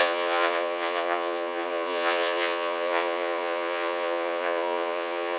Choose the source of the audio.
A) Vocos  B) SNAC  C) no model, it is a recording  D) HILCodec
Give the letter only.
A